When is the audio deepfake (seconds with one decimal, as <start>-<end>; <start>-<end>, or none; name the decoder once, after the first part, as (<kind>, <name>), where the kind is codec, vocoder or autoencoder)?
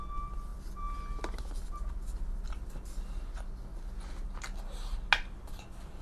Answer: none